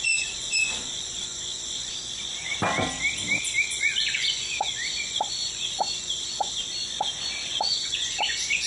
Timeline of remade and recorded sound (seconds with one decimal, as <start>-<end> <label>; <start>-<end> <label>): 0.0-2.5 remade; 2.5-3.6 recorded; 3.6-8.7 remade